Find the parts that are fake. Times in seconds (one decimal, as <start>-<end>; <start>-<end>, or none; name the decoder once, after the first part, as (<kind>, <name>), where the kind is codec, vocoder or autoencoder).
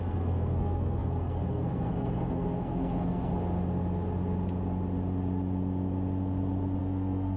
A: 0.0-3.3 (codec, SNAC); 6.8-7.4